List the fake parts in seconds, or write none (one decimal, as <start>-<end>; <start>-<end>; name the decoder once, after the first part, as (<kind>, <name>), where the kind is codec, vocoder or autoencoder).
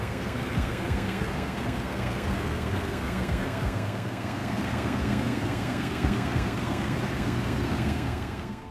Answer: 0.0-8.7 (codec, SNAC)